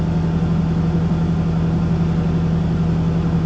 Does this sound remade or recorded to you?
recorded